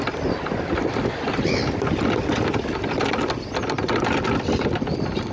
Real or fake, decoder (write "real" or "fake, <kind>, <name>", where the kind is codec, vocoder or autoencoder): fake, vocoder, BigVGAN v2